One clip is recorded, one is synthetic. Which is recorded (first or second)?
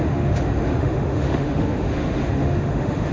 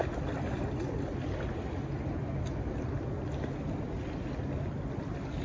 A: second